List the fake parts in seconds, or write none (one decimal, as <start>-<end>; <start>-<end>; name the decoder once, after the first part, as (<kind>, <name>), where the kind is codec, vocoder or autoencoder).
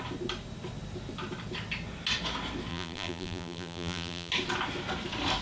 2.7-4.3 (vocoder, BigVGAN v2)